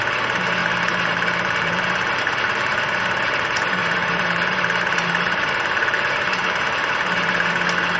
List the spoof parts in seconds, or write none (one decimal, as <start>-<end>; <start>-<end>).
0.6-2.2; 3.8-7.5